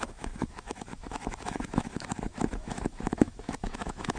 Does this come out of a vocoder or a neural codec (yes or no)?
yes